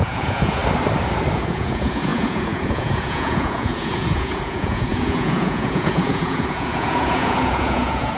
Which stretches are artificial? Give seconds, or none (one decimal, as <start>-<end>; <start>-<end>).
0.0-0.6; 1.3-8.2